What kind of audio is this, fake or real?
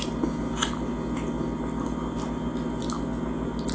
real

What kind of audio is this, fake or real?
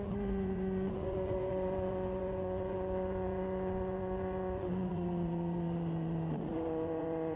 fake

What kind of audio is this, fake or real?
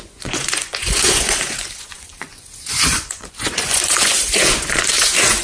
fake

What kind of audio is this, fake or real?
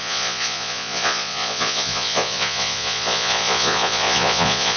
fake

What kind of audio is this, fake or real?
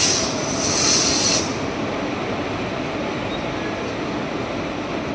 real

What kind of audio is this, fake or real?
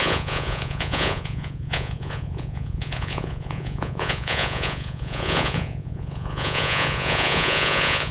fake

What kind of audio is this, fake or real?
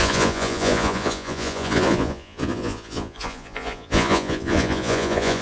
fake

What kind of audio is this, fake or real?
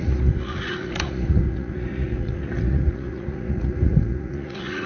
fake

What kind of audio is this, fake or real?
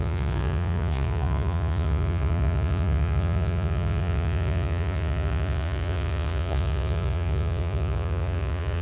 fake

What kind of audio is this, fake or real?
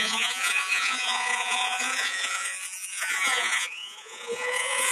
fake